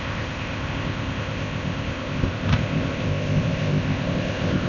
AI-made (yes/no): yes